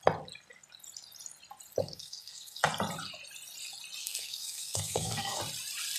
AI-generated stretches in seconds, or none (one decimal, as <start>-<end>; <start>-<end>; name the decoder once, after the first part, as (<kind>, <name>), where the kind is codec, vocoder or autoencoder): 1.8-2.6 (codec, SNAC); 4.0-5.4